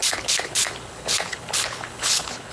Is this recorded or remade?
remade